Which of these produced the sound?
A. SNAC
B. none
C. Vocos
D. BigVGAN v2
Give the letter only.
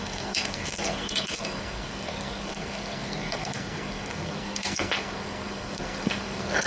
A